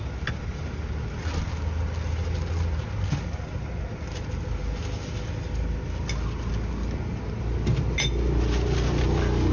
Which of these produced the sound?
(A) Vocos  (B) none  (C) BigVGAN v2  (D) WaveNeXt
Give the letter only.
B